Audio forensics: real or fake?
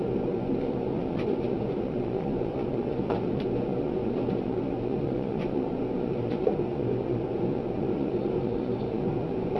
fake